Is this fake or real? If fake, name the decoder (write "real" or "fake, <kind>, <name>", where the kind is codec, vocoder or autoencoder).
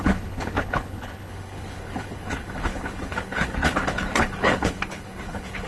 fake, codec, HILCodec